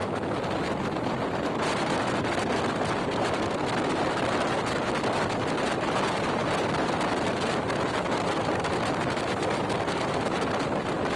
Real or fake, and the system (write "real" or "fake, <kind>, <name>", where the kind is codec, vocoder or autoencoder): real